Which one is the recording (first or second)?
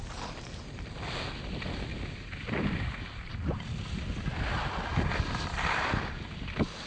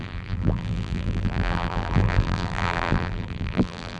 first